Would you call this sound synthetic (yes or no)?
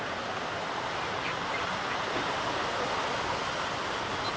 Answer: no